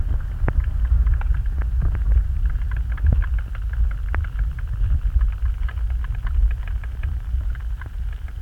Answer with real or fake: real